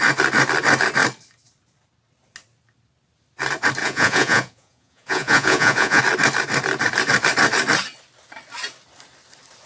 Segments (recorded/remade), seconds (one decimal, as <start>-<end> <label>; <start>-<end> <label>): 0.0-3.8 recorded; 3.8-6.0 remade; 6.0-9.7 recorded